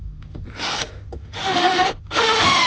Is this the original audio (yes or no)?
no